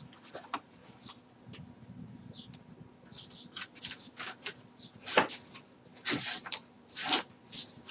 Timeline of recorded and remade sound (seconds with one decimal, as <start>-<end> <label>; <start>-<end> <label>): 0.0-5.9 recorded; 5.9-7.0 remade; 7.0-7.9 recorded